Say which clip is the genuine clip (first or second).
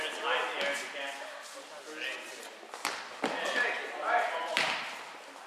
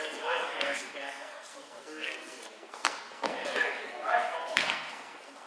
first